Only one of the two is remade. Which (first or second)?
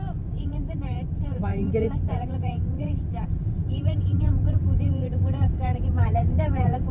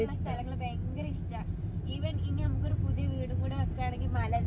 first